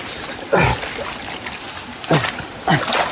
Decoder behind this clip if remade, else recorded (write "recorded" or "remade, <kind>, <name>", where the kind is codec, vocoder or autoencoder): recorded